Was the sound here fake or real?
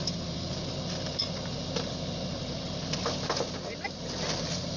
real